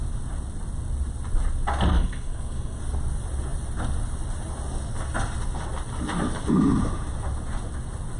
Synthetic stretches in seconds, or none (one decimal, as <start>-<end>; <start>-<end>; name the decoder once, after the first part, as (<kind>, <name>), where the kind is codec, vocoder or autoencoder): 1.9-2.8 (codec, SNAC)

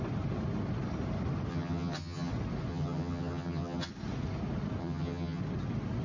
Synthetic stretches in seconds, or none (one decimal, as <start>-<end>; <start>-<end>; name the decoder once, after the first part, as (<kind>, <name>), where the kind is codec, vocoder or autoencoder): 1.5-2.3 (vocoder, HiFi-GAN); 2.7-3.9; 4.8-5.4

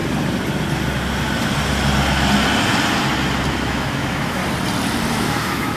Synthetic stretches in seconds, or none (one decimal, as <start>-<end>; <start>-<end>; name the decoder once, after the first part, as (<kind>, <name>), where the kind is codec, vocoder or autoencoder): 3.5-4.4 (autoencoder, DAC-VAE); 5.1-5.8

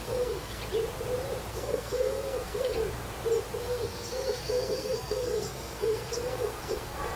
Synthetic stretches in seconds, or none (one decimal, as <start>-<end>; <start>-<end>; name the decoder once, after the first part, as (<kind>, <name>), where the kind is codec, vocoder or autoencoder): 0.0-0.6 (codec, SNAC); 1.5-2.8; 3.6-7.2

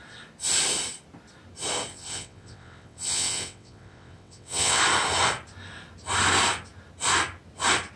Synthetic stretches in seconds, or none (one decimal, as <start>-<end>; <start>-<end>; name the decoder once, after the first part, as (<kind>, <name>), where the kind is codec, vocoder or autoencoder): 1.9-4.8 (vocoder, WaveNeXt)

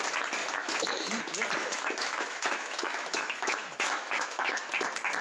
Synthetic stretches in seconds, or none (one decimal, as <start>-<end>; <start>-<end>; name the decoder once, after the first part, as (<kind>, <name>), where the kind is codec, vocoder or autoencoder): 0.4-1.2 (autoencoder, DAC-VAE); 1.6-4.7